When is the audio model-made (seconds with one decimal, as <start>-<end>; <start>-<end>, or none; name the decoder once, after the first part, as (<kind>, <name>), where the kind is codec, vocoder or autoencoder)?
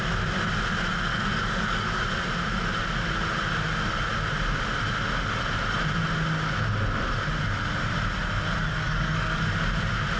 1.1-2.0 (codec, DAC); 8.6-9.4